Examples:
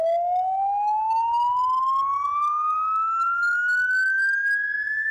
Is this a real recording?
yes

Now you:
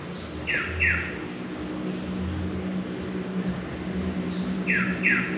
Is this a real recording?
yes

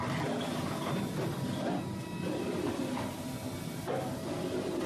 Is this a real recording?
yes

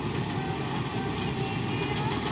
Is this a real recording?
yes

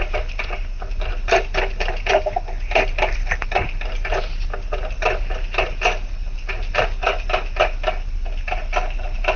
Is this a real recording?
yes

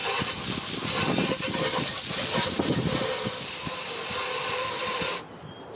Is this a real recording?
yes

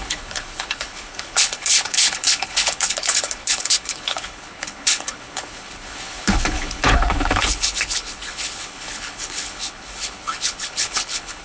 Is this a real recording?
no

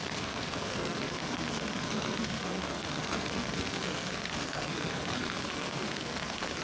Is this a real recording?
no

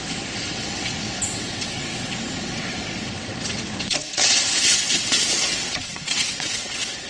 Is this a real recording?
no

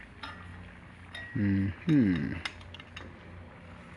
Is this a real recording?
yes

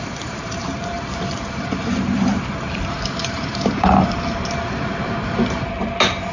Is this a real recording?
no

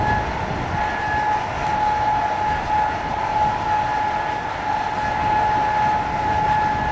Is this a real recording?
yes